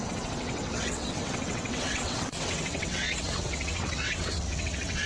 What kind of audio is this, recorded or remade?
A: remade